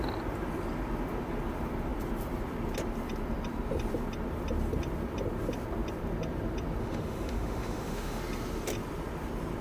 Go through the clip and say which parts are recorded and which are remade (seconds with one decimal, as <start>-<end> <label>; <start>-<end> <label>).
0.0-6.8 recorded; 6.8-8.2 remade; 8.2-9.6 recorded